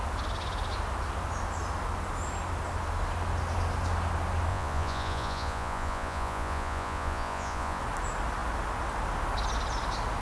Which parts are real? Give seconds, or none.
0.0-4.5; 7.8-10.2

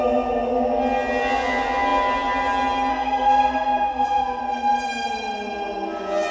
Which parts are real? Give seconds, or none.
0.0-2.9; 4.4-6.3

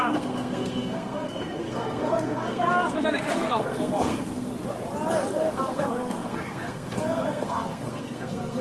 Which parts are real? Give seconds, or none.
4.5-5.5

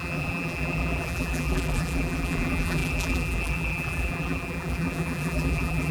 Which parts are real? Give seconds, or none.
none

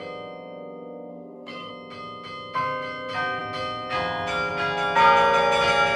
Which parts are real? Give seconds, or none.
0.0-1.1; 1.7-6.0

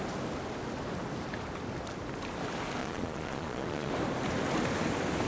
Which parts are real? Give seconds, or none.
0.0-2.8; 3.9-5.3

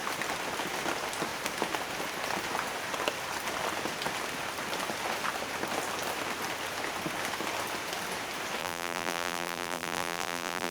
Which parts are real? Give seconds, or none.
0.0-8.6

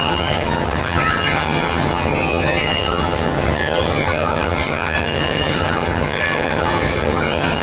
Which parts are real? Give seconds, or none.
none